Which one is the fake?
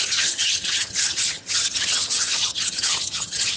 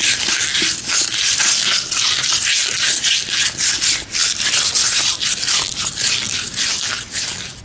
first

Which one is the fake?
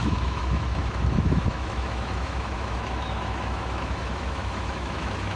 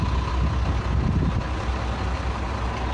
first